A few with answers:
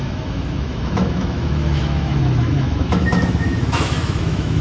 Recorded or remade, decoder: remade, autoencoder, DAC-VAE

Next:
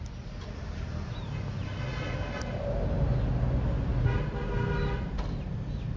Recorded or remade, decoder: recorded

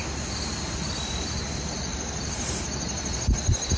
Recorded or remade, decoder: recorded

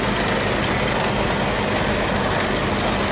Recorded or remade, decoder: recorded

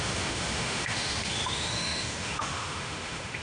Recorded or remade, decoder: remade, autoencoder, DAC-VAE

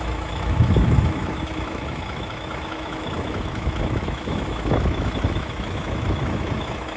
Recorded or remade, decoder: remade, autoencoder, DAC-VAE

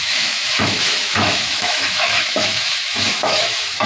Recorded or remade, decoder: remade, autoencoder, DAC-VAE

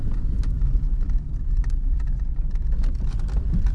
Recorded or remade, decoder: recorded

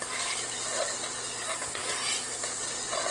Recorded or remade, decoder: recorded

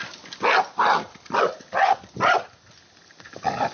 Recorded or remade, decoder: recorded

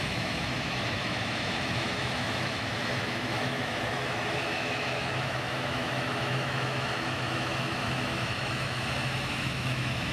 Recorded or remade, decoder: remade, autoencoder, DAC-VAE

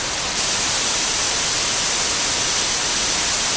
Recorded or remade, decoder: recorded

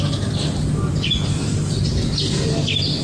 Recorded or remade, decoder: recorded